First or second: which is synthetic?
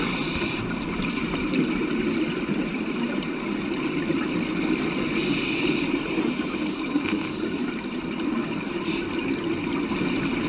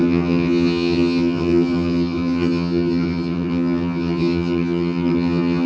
second